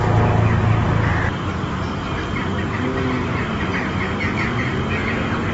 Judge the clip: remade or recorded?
recorded